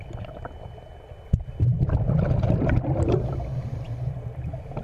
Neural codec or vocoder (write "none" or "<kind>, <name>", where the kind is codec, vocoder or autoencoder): none